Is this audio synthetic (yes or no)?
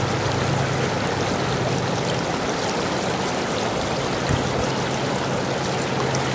no